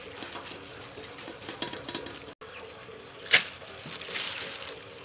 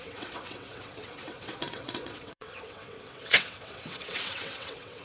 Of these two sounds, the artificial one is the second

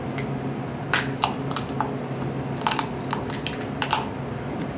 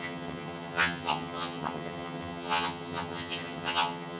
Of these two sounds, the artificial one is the second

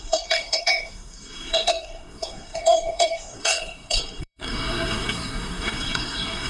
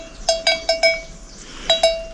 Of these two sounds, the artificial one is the first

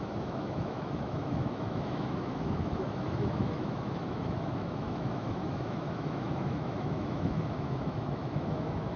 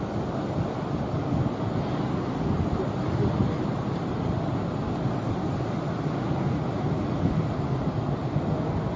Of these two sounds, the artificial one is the first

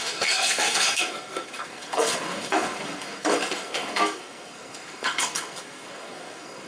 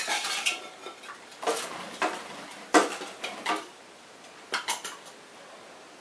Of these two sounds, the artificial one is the first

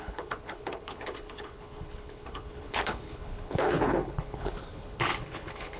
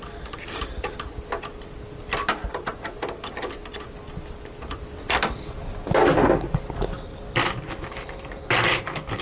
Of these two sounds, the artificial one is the first